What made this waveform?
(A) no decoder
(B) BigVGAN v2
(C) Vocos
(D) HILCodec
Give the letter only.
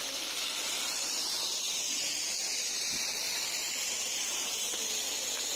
A